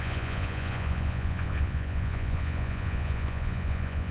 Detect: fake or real fake